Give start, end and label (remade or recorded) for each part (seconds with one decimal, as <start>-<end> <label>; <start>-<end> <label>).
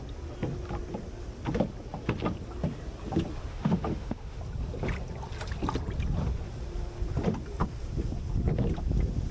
0.0-3.5 recorded; 3.5-4.4 remade; 4.4-9.3 recorded